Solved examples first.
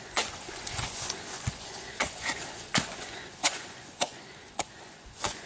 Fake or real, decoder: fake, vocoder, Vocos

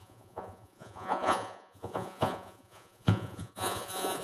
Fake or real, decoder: fake, vocoder, Vocos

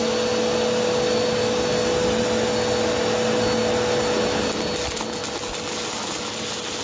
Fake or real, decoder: real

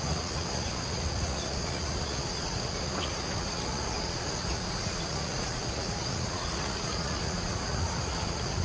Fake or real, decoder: fake, vocoder, Vocos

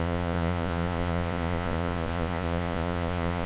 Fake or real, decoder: fake, vocoder, Vocos